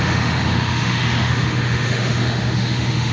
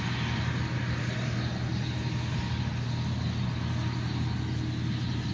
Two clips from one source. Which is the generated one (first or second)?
first